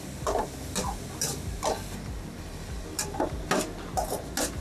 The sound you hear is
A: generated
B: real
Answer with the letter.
B